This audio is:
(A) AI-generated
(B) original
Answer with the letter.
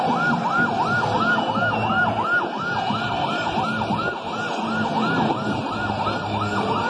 B